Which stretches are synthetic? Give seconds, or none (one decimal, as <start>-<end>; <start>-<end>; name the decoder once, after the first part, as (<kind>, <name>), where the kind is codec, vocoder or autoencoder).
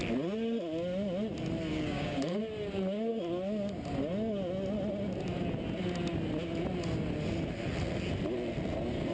1.7-2.4 (codec, DAC)